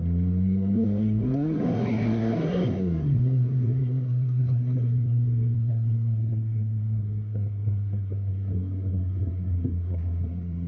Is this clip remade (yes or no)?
yes